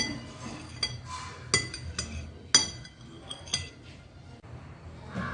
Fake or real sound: real